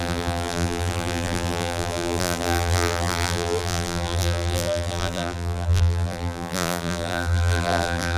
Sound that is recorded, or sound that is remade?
remade